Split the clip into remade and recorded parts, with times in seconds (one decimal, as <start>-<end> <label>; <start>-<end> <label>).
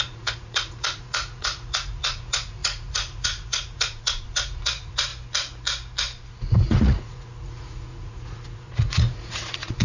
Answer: 0.0-5.1 remade; 5.1-6.3 recorded; 6.3-9.8 remade